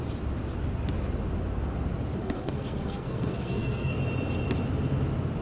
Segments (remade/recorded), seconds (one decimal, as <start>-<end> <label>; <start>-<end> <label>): 0.0-2.2 recorded; 2.2-4.0 remade; 4.0-5.4 recorded